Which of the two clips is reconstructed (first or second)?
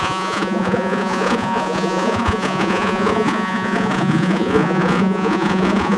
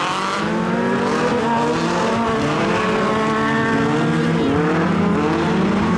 first